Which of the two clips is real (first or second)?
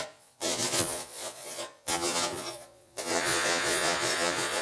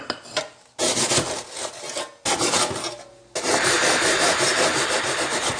second